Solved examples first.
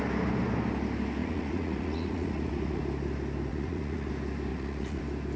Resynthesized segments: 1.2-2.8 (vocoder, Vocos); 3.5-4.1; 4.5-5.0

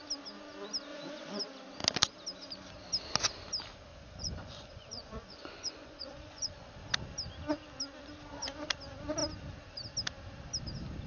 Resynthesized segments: 0.9-1.4 (vocoder, Vocos); 3.9-6.7

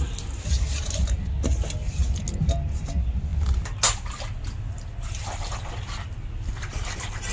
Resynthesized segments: none

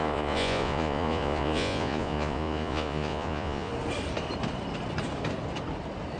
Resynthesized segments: 0.0-3.7 (vocoder, Vocos)